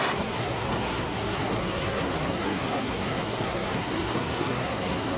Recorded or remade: remade